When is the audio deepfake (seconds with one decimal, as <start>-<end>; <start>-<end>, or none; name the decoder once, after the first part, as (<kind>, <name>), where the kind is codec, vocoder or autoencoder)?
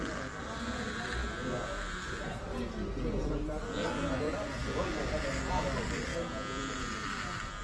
none